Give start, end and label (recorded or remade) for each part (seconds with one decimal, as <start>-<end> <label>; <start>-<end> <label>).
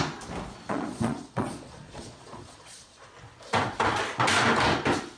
0.0-0.7 recorded; 0.7-3.1 remade; 3.1-5.2 recorded